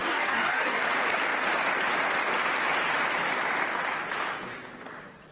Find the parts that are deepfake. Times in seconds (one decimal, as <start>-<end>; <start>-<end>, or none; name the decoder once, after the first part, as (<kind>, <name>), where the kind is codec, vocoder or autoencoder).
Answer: 0.0-0.8 (codec, DAC)